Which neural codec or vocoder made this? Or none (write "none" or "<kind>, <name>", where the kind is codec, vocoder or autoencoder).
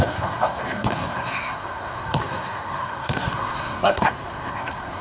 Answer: codec, SNAC